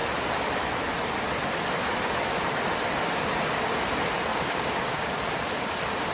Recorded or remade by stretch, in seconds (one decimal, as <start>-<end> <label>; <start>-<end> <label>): 0.0-4.3 recorded; 4.3-5.2 remade; 5.2-6.1 recorded